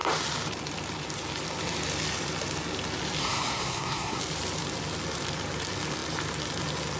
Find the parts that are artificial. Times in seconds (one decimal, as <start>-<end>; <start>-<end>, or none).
3.2-4.2